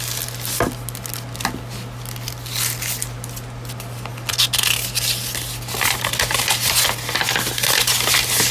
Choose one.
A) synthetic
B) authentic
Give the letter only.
B